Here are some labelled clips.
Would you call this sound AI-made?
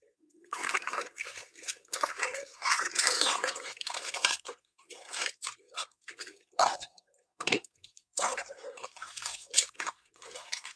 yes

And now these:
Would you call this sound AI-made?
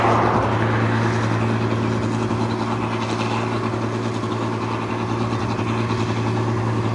no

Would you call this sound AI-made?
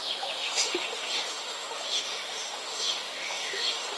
yes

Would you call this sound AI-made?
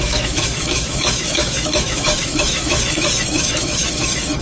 yes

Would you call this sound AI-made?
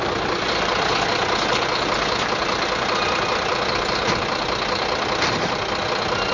no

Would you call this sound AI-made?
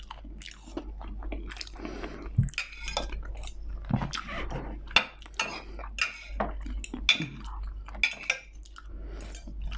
no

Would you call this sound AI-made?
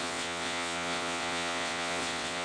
yes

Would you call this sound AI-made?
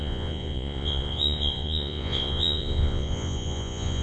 yes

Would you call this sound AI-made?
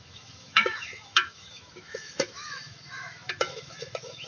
yes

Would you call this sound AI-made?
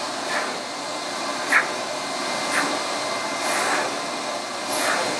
no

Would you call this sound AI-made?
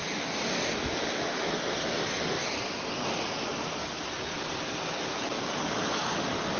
no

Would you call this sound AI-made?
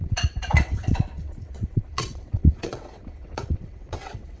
yes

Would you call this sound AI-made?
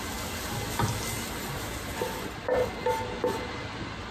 no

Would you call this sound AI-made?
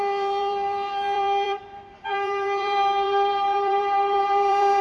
yes